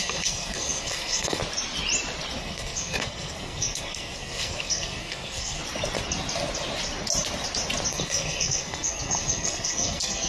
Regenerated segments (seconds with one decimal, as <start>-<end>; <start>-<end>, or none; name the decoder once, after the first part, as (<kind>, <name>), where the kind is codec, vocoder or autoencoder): 0.0-1.4 (codec, SNAC); 2.4-5.6; 7.9-10.3

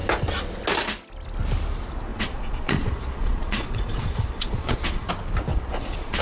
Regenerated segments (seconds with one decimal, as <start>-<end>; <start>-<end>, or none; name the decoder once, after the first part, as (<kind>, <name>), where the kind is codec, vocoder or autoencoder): 2.1-5.1 (vocoder, Vocos); 5.5-6.2

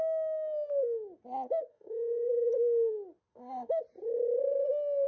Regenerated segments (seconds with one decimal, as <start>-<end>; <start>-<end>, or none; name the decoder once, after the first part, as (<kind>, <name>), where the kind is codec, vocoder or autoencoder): 1.7-2.9 (autoencoder, DAC-VAE); 3.3-3.8

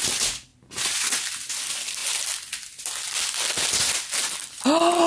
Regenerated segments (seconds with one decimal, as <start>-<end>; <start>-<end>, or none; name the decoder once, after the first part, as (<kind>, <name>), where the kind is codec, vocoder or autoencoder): none

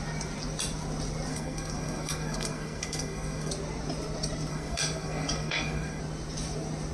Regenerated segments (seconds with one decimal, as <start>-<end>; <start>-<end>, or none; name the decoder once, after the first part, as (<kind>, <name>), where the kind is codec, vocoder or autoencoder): 1.3-3.5 (codec, SNAC); 4.5-6.0

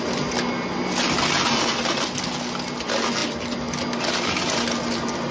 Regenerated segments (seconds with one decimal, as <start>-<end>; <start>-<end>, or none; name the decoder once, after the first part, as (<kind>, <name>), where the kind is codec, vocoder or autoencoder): none

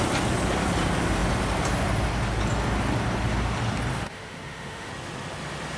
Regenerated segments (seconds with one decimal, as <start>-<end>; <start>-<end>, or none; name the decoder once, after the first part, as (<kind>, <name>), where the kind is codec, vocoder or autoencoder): 3.9-4.9 (autoencoder, DAC-VAE)